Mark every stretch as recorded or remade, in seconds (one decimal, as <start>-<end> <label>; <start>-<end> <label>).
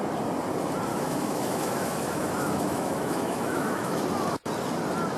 0.0-0.9 recorded; 0.9-4.0 remade; 4.0-5.2 recorded